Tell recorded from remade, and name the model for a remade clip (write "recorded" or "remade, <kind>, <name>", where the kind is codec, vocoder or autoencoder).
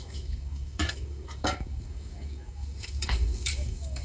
remade, codec, DAC